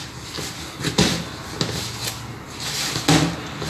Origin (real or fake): real